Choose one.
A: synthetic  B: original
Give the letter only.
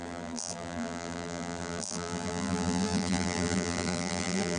A